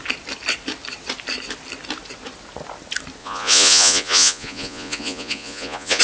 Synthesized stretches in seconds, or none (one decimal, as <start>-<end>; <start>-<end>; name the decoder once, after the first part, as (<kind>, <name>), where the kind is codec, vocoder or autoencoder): 3.2-6.0 (vocoder, Vocos)